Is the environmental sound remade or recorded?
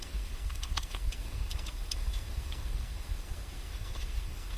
remade